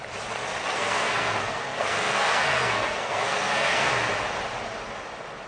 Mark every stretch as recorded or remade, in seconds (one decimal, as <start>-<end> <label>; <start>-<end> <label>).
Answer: 0.0-0.6 recorded; 0.6-3.9 remade; 3.9-5.5 recorded